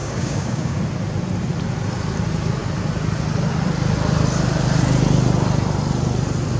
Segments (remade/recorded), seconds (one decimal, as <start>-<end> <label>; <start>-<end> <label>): 0.0-0.8 remade; 0.8-6.6 recorded